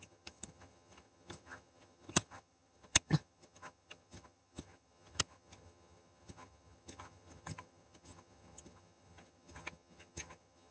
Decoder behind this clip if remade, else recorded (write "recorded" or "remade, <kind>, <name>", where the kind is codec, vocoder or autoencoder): remade, vocoder, HiFi-GAN